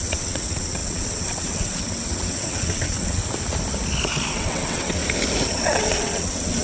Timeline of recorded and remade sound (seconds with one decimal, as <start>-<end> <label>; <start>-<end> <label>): 0.0-3.2 remade; 3.2-4.3 recorded; 4.3-5.0 remade; 5.0-5.5 recorded; 5.5-6.6 remade